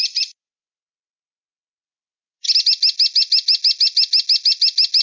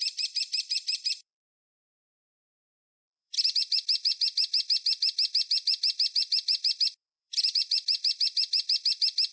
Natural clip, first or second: first